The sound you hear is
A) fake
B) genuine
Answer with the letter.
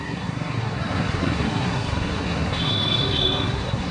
A